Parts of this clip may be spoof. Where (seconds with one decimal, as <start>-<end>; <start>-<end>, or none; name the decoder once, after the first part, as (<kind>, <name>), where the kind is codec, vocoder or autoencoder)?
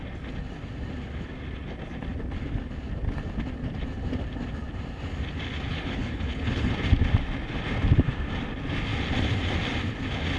5.7-6.7 (codec, HILCodec)